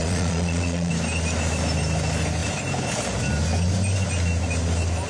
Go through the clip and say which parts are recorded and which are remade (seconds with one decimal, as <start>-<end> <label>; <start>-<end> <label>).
0.0-0.9 remade; 0.9-5.1 recorded